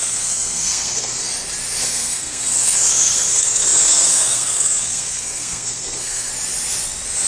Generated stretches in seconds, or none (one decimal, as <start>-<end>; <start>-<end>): 0.0-1.2; 1.8-6.3